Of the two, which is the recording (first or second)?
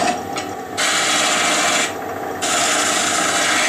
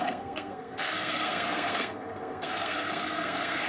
first